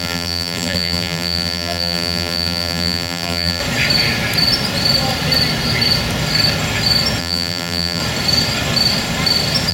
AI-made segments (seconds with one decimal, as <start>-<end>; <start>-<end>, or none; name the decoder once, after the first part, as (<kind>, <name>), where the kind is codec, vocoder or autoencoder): 0.0-3.6 (vocoder, BigVGAN v2); 7.2-8.0